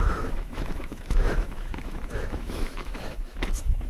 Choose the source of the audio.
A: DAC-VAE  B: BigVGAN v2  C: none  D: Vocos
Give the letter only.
A